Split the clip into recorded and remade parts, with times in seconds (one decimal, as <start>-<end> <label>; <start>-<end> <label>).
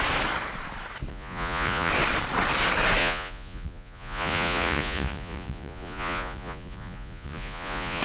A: 0.0-1.1 recorded; 1.1-1.9 remade; 1.9-3.0 recorded; 3.0-8.0 remade